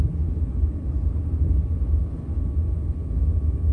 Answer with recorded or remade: recorded